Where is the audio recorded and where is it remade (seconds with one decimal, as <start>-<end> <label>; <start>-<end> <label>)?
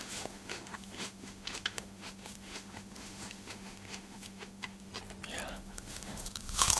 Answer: 0.0-4.9 remade; 4.9-5.5 recorded; 5.5-6.8 remade